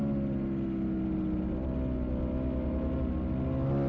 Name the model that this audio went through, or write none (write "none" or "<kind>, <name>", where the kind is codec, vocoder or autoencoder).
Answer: none